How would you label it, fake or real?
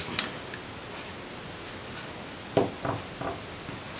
real